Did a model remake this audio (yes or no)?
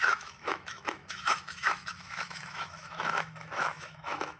yes